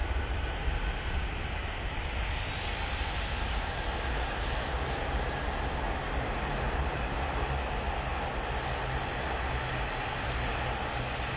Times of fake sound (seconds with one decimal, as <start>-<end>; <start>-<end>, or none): none